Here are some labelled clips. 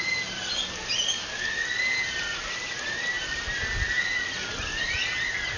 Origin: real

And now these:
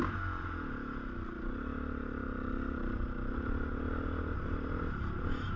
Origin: real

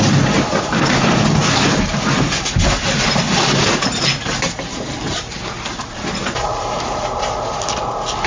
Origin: real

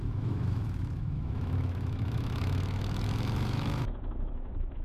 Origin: fake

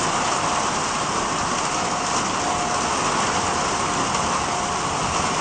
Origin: real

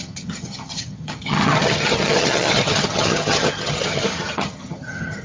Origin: fake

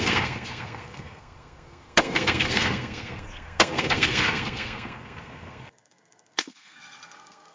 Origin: fake